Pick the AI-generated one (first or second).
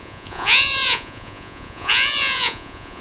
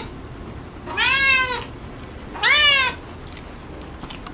first